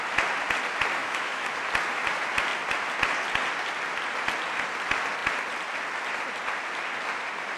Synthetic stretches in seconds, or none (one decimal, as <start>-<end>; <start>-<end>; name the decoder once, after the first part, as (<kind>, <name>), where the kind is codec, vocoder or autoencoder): 1.0-1.6 (autoencoder, DAC-VAE)